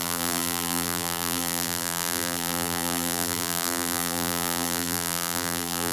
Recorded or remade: remade